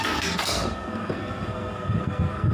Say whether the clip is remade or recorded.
remade